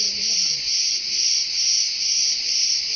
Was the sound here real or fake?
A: real